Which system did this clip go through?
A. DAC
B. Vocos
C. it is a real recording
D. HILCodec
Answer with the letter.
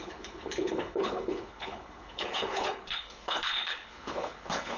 D